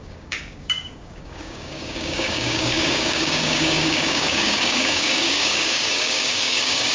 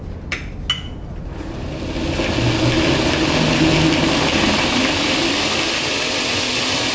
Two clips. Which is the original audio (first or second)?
second